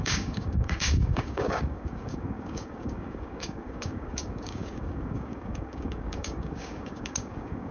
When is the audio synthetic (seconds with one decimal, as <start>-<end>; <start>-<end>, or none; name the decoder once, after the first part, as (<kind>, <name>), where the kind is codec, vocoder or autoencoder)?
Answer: 0.0-7.7 (codec, DAC)